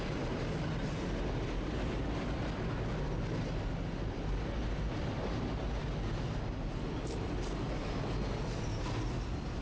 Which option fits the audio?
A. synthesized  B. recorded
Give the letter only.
B